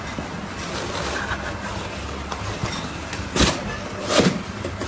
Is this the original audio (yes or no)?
yes